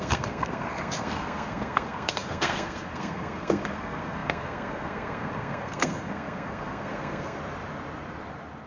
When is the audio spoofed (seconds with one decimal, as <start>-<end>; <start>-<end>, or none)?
0.0-7.4